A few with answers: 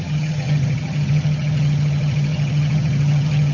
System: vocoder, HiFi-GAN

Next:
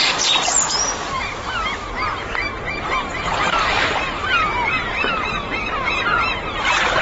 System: vocoder, BigVGAN v2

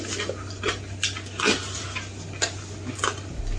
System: none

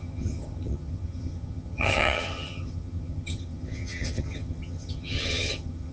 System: vocoder, HiFi-GAN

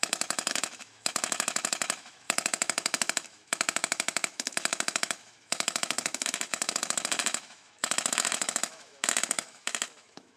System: autoencoder, DAC-VAE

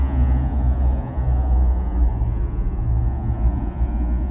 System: vocoder, Vocos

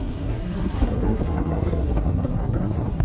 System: codec, SNAC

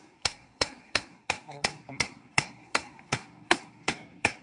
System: codec, SNAC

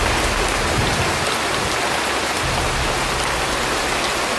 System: none